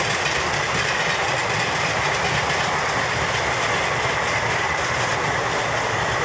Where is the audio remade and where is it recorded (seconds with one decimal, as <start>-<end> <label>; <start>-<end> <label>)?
0.0-6.2 recorded